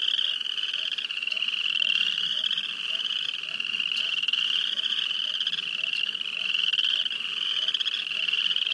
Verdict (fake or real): real